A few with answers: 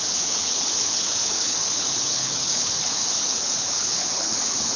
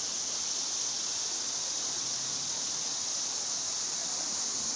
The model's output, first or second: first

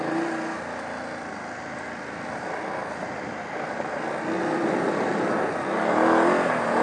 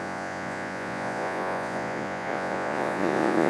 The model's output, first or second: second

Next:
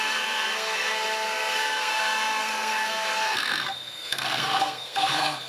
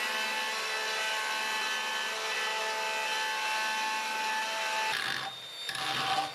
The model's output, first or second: first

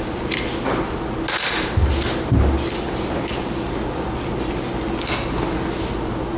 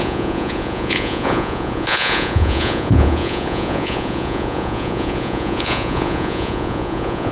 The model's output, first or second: second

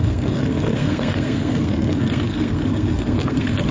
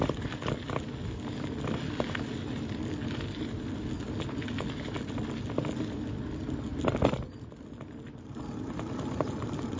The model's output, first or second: first